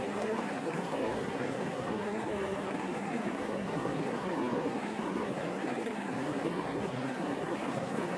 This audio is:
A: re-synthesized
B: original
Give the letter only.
A